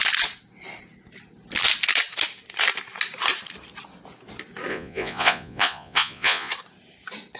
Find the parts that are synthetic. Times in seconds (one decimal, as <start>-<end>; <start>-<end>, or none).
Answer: 4.7-6.5